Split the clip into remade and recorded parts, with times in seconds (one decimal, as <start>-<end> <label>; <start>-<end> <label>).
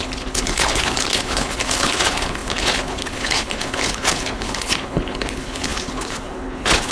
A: 0.0-6.9 remade